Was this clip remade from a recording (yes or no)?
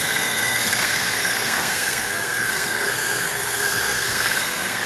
yes